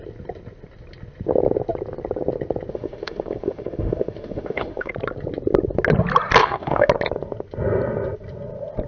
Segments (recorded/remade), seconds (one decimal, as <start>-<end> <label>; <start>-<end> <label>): 0.0-2.7 recorded; 2.7-4.9 remade; 4.9-6.4 recorded; 6.4-6.9 remade; 6.9-8.9 recorded